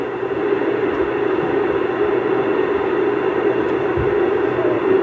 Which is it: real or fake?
real